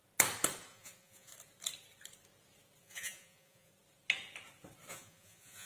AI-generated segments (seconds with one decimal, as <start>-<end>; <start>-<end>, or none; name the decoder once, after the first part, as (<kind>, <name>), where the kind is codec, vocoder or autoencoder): 0.7-1.3 (vocoder, Vocos); 2.8-3.7; 4.9-5.7